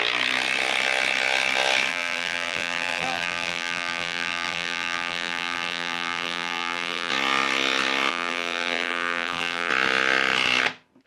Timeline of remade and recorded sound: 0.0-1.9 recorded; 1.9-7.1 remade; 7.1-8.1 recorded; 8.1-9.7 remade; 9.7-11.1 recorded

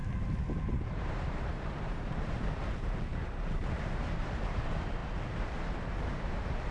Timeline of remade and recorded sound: 0.0-0.6 recorded; 0.6-6.7 remade

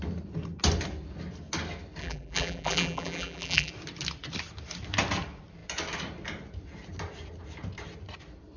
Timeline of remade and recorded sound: 0.0-2.0 recorded; 2.0-3.7 remade; 3.7-8.6 recorded

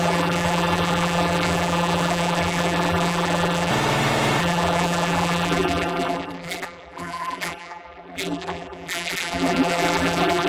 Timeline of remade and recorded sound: 0.0-3.7 remade; 3.7-4.4 recorded; 4.4-10.5 remade

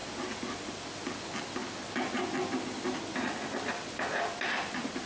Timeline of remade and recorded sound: 0.0-5.1 recorded